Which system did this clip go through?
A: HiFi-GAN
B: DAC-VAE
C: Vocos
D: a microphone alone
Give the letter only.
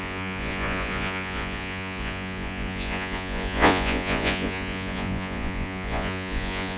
C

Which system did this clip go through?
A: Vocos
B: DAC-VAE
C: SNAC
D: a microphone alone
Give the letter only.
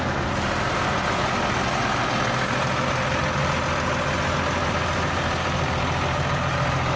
D